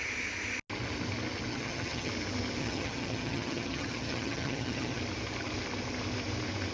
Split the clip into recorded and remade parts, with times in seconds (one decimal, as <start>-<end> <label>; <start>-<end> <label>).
0.0-1.5 recorded; 1.5-2.1 remade; 2.1-2.6 recorded; 2.6-5.0 remade; 5.0-6.7 recorded